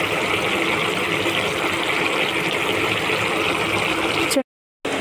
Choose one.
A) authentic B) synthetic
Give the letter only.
A